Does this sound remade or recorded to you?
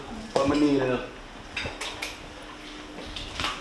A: recorded